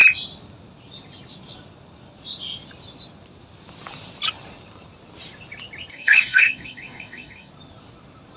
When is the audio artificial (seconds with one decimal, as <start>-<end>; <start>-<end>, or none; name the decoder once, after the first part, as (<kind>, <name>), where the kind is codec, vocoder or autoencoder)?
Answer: 5.9-7.5 (codec, DAC)

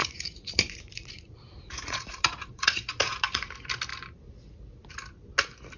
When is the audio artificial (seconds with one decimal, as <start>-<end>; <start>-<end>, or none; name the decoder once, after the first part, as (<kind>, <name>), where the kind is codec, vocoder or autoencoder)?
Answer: 0.0-3.5 (vocoder, Vocos)

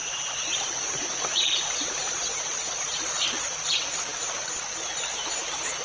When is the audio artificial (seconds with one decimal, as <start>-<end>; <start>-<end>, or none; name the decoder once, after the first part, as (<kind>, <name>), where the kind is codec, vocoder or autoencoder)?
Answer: 0.0-3.4 (vocoder, BigVGAN v2); 4.1-5.8